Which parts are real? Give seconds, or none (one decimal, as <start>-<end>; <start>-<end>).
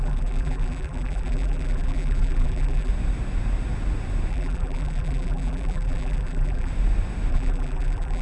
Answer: 2.9-4.3; 6.7-7.3